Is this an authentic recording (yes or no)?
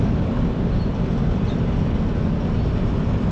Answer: yes